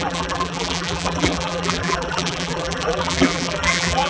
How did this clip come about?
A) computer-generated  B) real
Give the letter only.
A